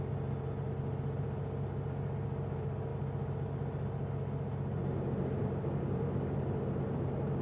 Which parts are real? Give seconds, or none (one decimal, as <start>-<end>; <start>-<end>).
0.0-7.4